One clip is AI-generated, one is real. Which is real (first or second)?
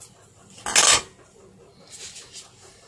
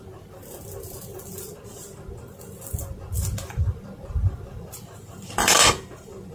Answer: first